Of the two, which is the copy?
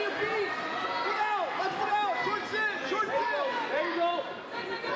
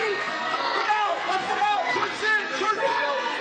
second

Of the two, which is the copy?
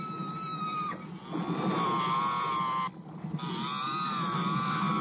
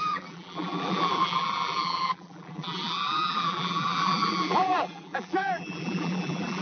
second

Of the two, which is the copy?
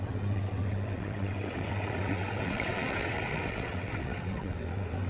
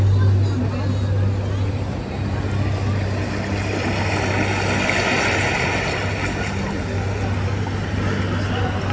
first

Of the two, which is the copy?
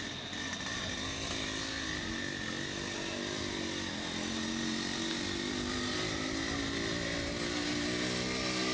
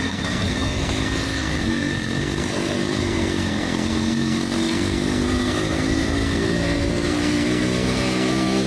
second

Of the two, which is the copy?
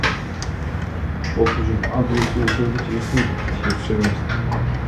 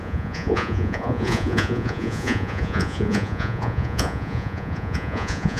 second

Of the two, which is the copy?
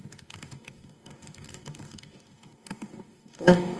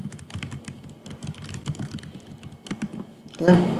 first